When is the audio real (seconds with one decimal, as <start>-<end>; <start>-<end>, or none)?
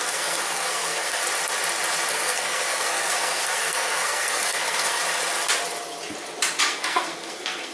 1.2-2.1; 5.0-6.6